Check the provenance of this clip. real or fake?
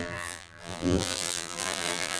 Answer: fake